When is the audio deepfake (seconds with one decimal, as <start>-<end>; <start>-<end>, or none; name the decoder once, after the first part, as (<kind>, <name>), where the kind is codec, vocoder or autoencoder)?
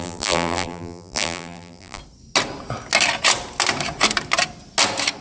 0.0-2.0 (vocoder, BigVGAN v2)